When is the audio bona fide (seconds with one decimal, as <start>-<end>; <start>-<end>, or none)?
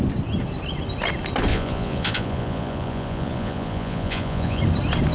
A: 0.0-1.5; 4.6-5.1